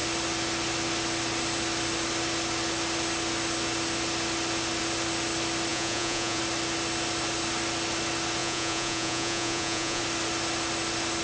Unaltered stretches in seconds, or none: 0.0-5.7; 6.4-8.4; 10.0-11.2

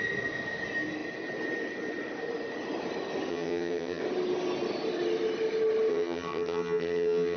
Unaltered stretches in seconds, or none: 0.0-3.3; 4.0-5.9

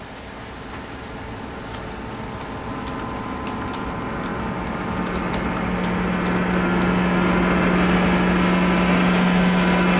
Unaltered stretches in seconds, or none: 0.0-10.0

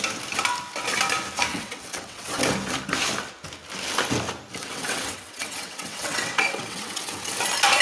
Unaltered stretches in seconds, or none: 0.0-1.5; 2.4-4.6; 7.3-7.8

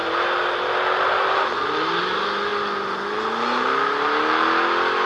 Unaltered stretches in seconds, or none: 0.0-5.1

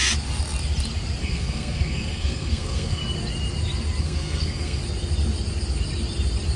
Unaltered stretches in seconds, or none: 0.0-1.2; 3.0-4.0; 4.8-6.6

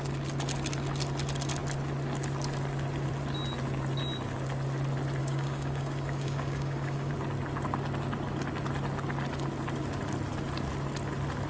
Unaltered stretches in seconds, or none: 0.0-5.2; 7.1-11.5

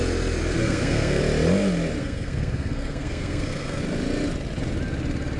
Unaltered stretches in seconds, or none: 0.0-0.6; 1.2-2.0; 3.8-5.4